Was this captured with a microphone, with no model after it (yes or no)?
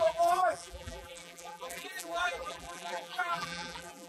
no